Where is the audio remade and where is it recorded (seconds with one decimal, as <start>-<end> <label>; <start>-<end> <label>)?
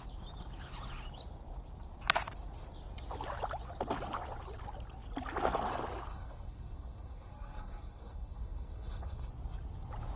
0.0-6.1 recorded; 6.1-9.3 remade; 9.3-10.2 recorded